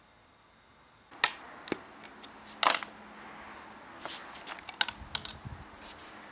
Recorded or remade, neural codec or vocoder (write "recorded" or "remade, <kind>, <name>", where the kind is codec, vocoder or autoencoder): recorded